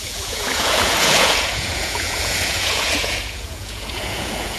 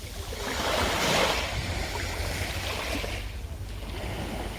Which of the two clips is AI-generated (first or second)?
first